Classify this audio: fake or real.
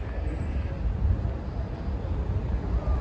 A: real